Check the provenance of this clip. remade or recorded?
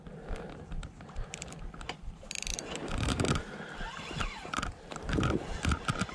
recorded